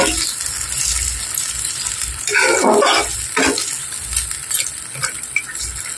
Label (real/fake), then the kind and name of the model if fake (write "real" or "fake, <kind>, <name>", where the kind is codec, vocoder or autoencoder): real